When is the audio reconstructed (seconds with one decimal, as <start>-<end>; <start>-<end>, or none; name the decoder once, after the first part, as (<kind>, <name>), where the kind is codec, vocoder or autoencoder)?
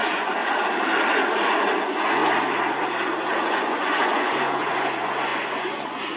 0.0-0.4 (vocoder, Vocos); 1.4-2.2; 3.4-6.2